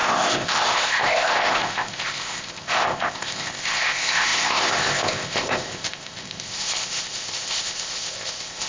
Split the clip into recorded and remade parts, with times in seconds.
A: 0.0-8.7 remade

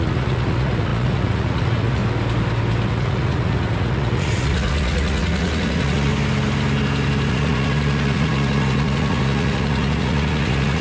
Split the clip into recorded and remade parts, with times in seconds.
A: 0.0-2.0 remade; 2.0-2.9 recorded; 2.9-6.1 remade; 6.1-7.3 recorded; 7.3-10.8 remade

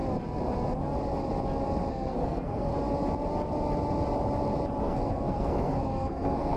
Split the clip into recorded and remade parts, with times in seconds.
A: 0.0-1.9 recorded; 1.9-2.7 remade; 2.7-4.8 recorded; 4.8-6.6 remade

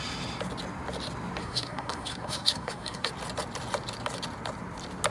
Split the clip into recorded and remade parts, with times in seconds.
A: 0.0-1.4 recorded; 1.4-3.1 remade; 3.1-5.1 recorded

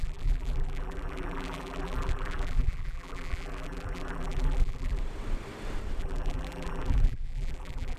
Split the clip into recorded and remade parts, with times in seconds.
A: 0.0-5.0 remade; 5.0-6.0 recorded; 6.0-8.0 remade